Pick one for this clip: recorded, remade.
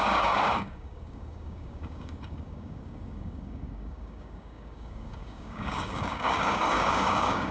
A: remade